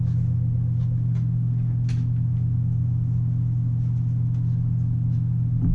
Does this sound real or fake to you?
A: real